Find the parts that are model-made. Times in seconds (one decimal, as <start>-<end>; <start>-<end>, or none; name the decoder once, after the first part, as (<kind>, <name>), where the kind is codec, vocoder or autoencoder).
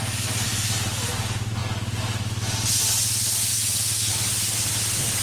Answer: 3.5-4.1 (autoencoder, DAC-VAE)